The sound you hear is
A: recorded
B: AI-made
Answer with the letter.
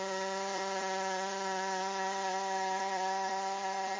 B